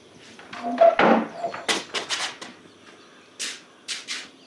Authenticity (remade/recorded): recorded